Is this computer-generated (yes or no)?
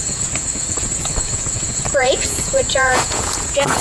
yes